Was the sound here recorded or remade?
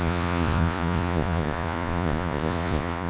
remade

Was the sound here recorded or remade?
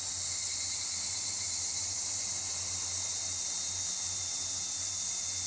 recorded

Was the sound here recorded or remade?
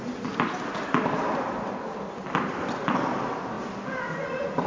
recorded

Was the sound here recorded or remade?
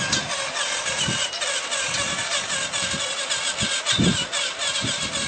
recorded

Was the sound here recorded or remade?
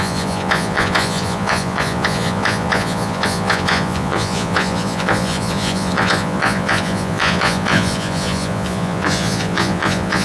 remade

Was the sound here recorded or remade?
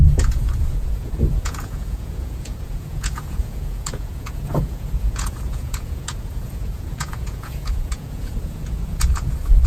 remade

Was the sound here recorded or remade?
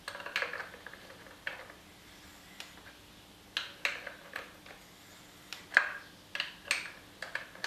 recorded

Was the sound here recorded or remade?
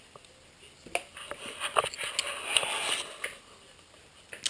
recorded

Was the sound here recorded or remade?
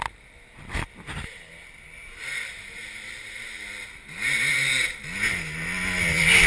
recorded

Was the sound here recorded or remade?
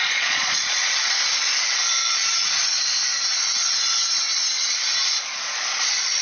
remade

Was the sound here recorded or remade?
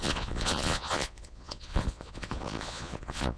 remade